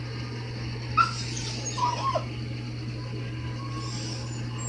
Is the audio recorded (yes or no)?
yes